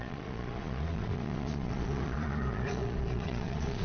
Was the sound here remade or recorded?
remade